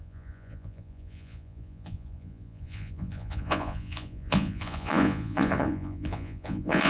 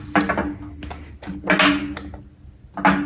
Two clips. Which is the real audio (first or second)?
second